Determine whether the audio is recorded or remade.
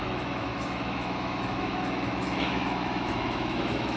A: remade